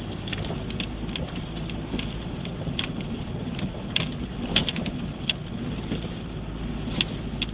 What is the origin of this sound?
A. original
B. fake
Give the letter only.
A